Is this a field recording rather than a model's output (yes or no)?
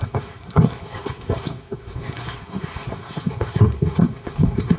no